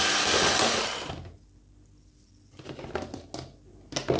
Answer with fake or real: real